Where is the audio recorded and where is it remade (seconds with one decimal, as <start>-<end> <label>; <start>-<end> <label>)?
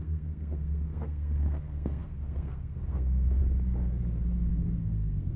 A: 0.0-3.4 remade; 3.4-4.5 recorded; 4.5-5.4 remade